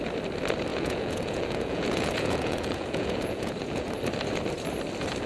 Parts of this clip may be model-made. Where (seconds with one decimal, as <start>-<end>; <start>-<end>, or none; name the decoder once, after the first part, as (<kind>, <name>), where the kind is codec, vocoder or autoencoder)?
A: 0.7-3.9 (vocoder, Vocos)